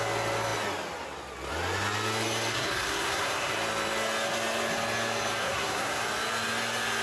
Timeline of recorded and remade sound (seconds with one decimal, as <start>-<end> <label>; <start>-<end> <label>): 0.0-2.5 recorded; 2.5-3.5 remade; 3.5-5.4 recorded; 5.4-6.0 remade; 6.0-7.0 recorded

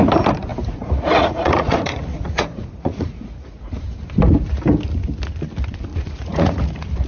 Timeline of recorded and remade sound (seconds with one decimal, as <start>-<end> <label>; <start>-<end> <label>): 0.0-0.5 recorded; 0.5-3.7 remade; 3.7-5.9 recorded; 5.9-6.6 remade; 6.6-7.1 recorded